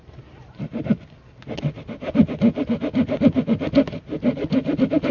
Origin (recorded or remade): recorded